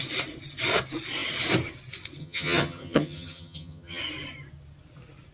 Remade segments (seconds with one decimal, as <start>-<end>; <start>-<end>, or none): 2.2-4.0

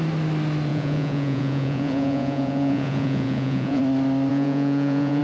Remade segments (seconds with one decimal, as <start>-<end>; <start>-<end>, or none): 0.7-3.8; 4.3-5.2

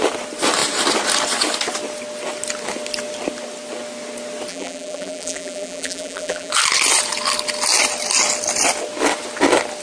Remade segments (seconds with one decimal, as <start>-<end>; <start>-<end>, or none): 4.5-6.5

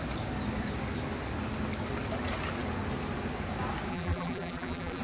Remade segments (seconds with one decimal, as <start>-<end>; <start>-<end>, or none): 3.9-5.0